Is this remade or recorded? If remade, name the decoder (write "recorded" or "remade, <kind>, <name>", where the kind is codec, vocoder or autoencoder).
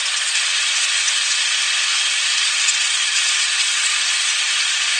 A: remade, vocoder, Vocos